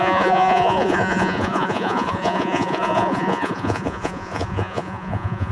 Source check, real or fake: fake